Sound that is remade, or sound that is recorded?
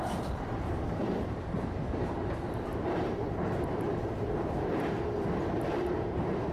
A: remade